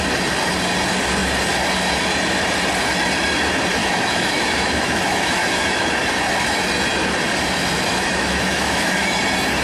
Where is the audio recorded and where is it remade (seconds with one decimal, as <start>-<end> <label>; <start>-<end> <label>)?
0.0-3.8 recorded; 3.8-5.9 remade; 5.9-7.9 recorded; 7.9-9.2 remade; 9.2-9.6 recorded